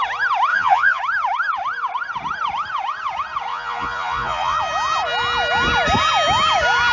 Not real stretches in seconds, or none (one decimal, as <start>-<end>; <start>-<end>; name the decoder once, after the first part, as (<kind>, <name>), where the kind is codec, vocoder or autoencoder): 0.5-1.0 (vocoder, Vocos); 3.5-4.6